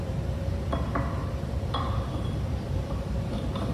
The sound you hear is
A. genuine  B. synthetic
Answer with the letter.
B